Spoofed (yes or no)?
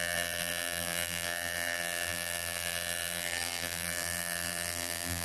yes